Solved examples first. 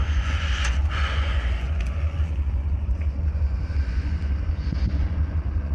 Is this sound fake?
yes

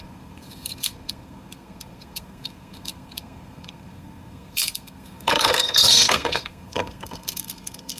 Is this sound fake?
yes